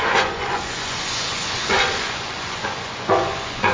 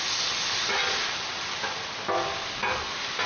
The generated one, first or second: first